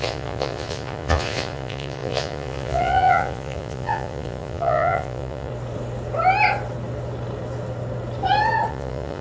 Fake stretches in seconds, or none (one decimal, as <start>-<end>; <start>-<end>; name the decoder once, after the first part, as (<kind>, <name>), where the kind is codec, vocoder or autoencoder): 0.0-5.5 (vocoder, Vocos); 8.7-9.2